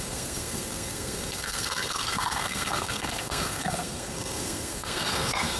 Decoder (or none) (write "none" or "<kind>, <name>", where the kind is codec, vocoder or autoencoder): codec, SNAC